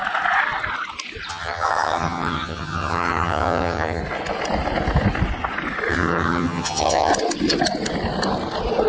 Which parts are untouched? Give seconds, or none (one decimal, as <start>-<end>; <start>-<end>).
0.0-1.3; 4.0-5.9; 7.1-8.9